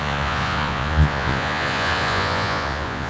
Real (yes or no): no